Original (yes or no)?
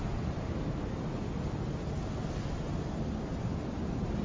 yes